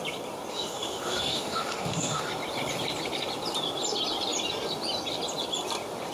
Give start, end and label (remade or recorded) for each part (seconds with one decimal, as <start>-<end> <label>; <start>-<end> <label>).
0.0-0.5 recorded; 0.5-2.3 remade; 2.3-6.1 recorded